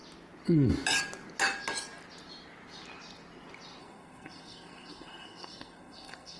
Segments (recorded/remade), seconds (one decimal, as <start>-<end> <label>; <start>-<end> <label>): 0.0-3.8 recorded; 3.8-6.4 remade